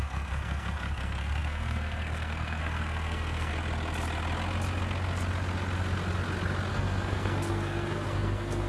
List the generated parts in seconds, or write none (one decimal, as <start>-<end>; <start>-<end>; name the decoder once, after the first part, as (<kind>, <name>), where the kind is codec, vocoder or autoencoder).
0.0-3.5 (codec, SNAC); 6.7-8.7